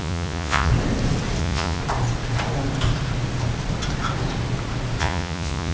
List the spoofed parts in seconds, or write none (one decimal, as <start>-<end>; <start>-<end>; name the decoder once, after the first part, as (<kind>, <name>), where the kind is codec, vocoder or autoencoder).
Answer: 0.0-0.7 (vocoder, Vocos); 1.4-1.8; 5.0-5.7